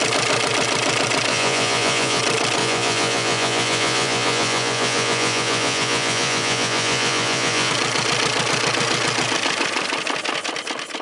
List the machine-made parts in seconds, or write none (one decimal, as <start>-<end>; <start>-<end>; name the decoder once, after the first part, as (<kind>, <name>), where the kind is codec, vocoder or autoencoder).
1.3-2.2 (vocoder, Vocos); 2.6-7.7